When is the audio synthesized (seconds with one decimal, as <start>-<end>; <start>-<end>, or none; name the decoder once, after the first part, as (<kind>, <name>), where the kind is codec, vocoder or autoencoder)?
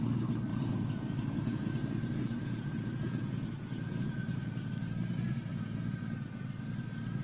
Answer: 0.5-4.7 (vocoder, Vocos); 5.5-6.4